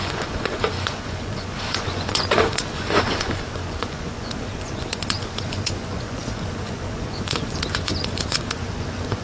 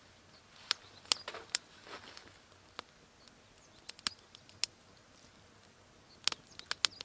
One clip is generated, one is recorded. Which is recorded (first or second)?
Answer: second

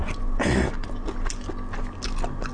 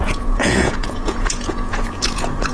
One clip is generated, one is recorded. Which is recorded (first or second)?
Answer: first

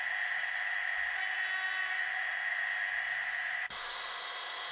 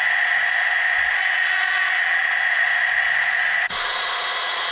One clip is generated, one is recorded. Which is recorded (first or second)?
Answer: first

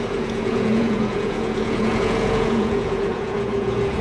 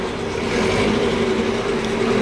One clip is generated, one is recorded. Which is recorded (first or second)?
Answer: second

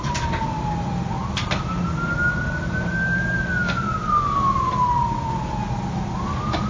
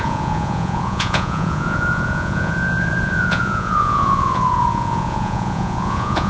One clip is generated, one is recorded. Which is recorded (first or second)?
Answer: first